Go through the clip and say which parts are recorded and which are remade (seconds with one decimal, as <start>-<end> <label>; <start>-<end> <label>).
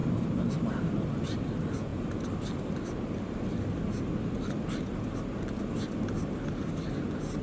0.0-7.4 recorded